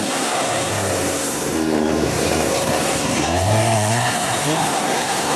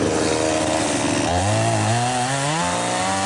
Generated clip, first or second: first